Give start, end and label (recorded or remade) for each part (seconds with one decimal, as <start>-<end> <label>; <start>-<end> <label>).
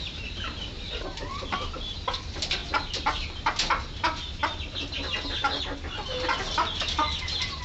0.0-7.6 recorded